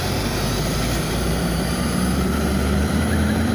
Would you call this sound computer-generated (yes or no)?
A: yes